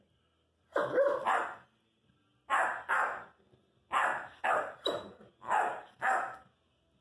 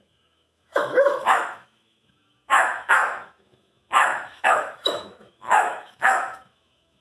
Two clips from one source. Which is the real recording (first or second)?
first